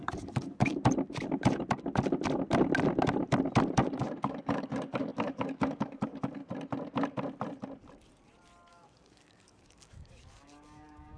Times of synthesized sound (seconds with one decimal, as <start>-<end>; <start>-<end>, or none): 0.0-0.7; 4.2-6.4; 8.7-11.2